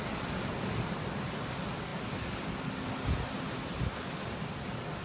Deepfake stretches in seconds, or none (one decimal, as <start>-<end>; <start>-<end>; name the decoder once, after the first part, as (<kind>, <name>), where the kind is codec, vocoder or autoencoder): none